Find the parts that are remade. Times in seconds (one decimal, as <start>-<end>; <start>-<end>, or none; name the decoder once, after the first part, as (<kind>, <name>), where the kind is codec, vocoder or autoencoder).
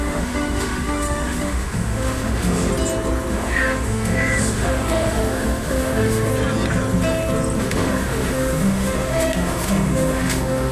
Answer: 0.0-2.7 (autoencoder, DAC-VAE); 3.3-6.3; 7.6-10.7